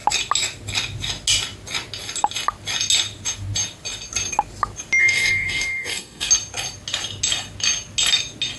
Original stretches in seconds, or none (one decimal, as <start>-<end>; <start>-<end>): 0.0-5.0; 6.3-8.6